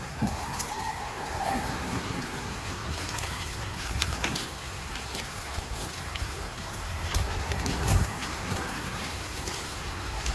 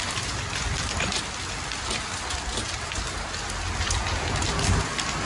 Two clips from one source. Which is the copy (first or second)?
first